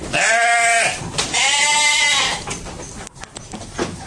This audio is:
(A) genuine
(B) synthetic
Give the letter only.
A